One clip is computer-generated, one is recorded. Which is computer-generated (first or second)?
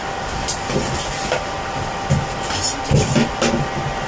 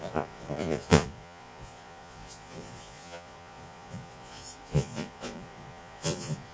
second